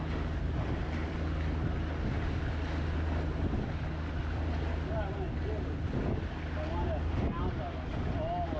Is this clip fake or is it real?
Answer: real